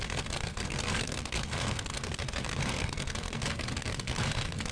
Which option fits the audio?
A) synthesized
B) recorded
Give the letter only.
A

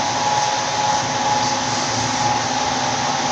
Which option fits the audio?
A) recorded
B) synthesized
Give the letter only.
A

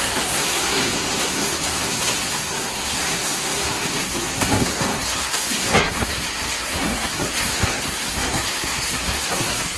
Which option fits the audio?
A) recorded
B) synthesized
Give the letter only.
B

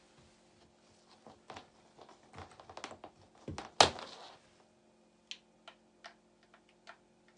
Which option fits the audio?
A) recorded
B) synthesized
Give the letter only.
A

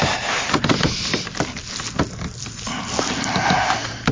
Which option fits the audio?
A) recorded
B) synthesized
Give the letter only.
A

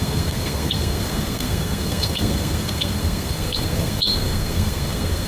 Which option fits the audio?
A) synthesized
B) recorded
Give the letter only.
A